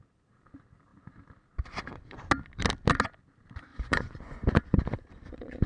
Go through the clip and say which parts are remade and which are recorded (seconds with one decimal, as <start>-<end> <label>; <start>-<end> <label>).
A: 0.0-3.7 recorded; 3.7-5.7 remade